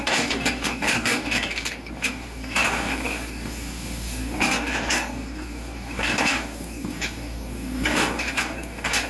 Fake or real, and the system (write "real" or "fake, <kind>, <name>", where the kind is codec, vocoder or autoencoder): fake, codec, DAC